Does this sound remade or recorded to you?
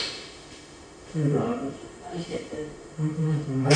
remade